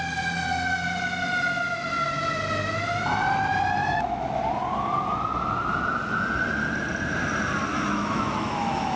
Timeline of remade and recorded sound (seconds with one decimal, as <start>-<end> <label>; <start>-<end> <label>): 0.0-3.8 recorded; 3.8-4.4 remade; 4.4-7.7 recorded; 7.7-9.0 remade